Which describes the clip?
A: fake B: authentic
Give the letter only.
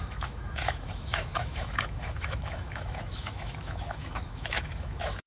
A